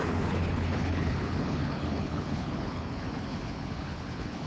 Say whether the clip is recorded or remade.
remade